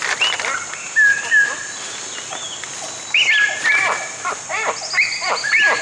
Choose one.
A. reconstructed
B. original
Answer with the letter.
B